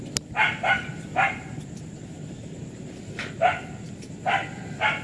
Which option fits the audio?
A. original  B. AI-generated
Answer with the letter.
A